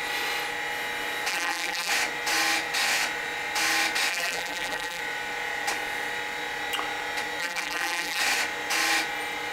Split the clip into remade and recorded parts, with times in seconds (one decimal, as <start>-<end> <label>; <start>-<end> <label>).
0.0-1.3 recorded; 1.3-1.9 remade; 1.9-4.1 recorded; 4.1-5.0 remade; 5.0-7.4 recorded; 7.4-8.2 remade; 8.2-9.5 recorded